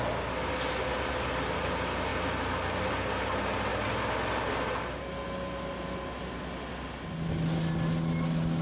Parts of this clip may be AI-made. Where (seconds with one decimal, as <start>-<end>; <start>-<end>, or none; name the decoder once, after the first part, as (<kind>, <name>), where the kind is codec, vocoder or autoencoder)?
none